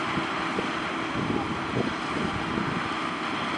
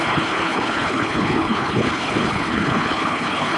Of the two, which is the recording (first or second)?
first